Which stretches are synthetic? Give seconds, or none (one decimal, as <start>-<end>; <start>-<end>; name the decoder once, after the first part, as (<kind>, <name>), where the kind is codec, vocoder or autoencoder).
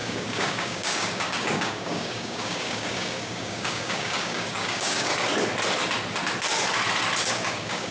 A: 0.0-5.1 (codec, DAC); 7.3-7.9